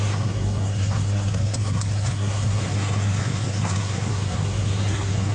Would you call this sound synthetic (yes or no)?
yes